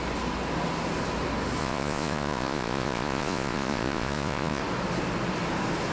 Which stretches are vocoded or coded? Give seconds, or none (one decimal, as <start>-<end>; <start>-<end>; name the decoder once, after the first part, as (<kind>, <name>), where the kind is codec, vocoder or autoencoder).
1.6-4.6 (vocoder, Vocos)